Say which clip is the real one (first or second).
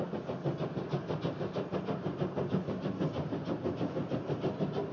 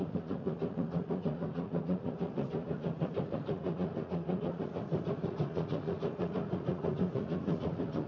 first